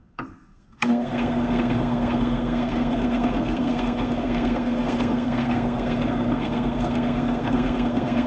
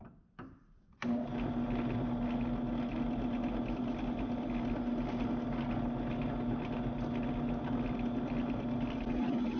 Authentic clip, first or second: second